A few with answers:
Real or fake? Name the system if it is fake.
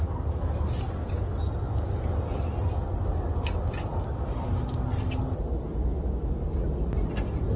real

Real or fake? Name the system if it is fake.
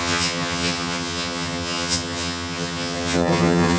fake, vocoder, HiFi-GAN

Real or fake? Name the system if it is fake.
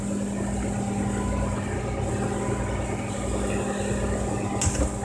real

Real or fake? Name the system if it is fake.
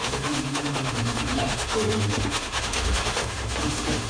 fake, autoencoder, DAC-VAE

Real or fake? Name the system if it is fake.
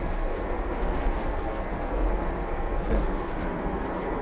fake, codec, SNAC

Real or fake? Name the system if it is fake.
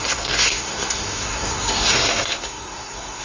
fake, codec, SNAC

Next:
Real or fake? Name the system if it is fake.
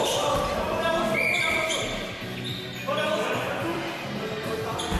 real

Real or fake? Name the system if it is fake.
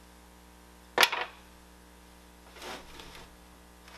real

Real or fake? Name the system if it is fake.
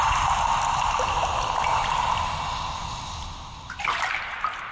real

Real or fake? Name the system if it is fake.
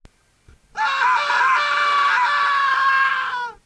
real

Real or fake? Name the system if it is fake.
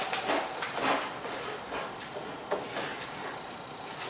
real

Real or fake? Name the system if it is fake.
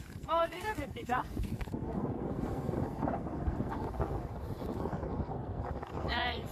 fake, codec, SNAC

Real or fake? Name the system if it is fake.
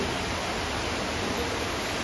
real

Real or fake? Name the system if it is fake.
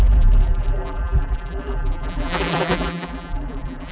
fake, vocoder, BigVGAN v2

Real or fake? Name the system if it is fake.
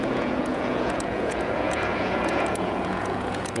fake, vocoder, Vocos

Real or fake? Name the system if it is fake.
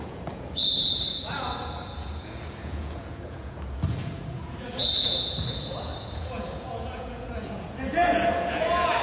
fake, vocoder, Vocos